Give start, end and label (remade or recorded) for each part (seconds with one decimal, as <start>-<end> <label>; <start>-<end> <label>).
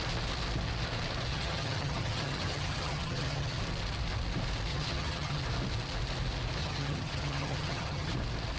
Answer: 0.0-1.3 recorded; 1.3-3.6 remade; 3.6-4.7 recorded; 4.7-5.4 remade; 5.4-6.6 recorded; 6.6-8.1 remade; 8.1-8.6 recorded